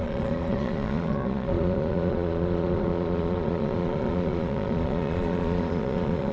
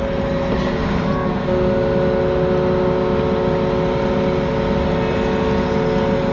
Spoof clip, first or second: first